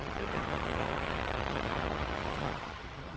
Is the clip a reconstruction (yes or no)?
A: yes